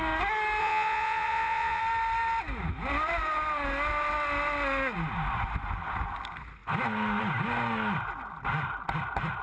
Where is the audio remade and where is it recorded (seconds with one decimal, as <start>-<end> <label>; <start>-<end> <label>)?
0.0-0.6 recorded; 0.6-1.8 remade; 1.8-9.4 recorded